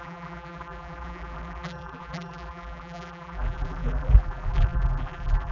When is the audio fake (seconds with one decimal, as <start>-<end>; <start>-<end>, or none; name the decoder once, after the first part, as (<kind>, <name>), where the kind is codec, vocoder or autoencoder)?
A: 0.0-5.5 (vocoder, BigVGAN v2)